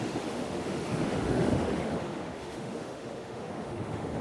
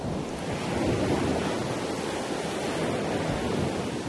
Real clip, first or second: second